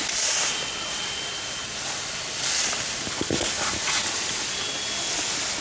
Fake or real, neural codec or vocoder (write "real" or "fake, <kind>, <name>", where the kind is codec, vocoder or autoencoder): real